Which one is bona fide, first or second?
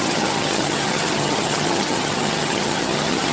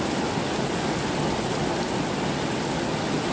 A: second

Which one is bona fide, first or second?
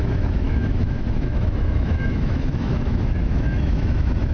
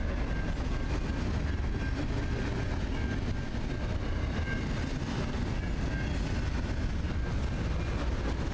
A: second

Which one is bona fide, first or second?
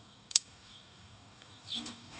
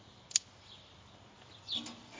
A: second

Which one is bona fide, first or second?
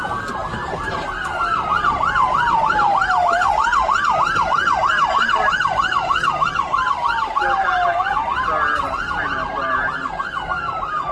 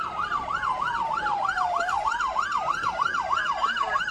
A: first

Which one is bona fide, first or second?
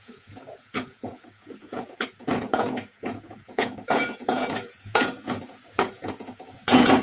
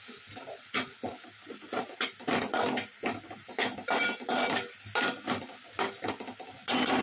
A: second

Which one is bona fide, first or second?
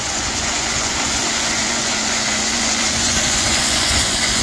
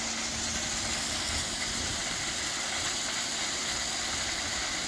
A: second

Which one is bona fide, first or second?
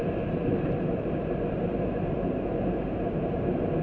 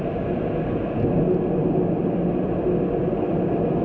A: second